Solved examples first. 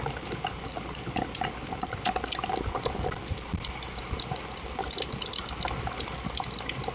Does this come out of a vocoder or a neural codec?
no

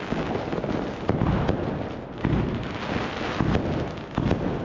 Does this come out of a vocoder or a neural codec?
no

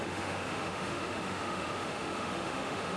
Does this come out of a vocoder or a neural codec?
yes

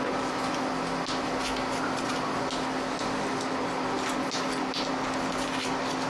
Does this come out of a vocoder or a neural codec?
no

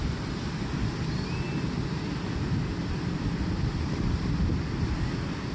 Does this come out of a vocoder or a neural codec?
no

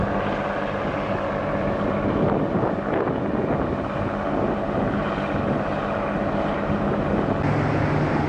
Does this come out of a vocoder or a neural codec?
no